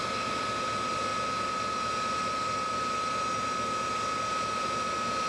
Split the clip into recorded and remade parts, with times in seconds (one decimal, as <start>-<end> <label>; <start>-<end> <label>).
0.0-5.3 recorded